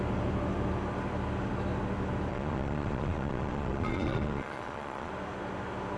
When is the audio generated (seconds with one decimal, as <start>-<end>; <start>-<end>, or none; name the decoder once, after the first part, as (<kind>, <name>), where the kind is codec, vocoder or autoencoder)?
2.3-5.1 (vocoder, Vocos)